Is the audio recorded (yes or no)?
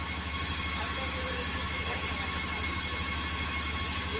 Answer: no